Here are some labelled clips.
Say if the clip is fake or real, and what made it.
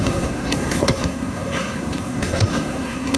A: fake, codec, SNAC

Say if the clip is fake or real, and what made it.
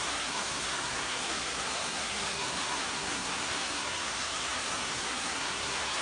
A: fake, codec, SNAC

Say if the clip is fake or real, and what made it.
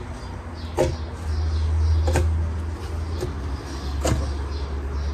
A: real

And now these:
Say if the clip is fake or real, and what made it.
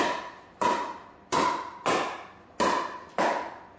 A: real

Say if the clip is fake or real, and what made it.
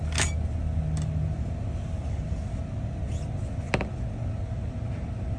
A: real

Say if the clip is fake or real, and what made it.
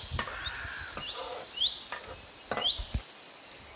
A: real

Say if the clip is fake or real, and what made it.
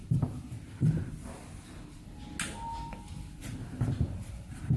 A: real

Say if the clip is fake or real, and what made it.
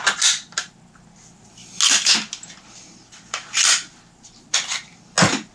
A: real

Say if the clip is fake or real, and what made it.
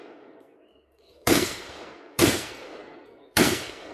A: fake, codec, SNAC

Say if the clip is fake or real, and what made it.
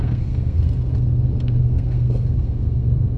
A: fake, codec, SNAC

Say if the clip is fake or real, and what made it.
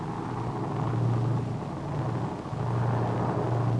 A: real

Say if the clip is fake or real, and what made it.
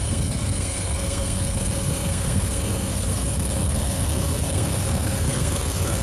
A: fake, codec, SNAC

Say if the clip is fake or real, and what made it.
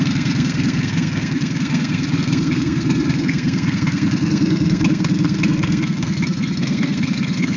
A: fake, codec, SNAC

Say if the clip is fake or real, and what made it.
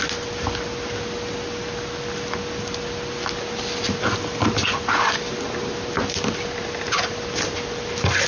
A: real